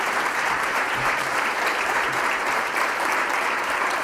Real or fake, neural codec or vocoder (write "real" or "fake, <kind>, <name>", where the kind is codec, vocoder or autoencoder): fake, vocoder, BigVGAN v2